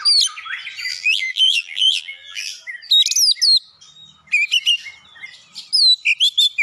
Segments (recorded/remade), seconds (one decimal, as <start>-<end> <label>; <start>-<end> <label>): 0.0-0.9 recorded; 0.9-2.5 remade; 2.5-6.6 recorded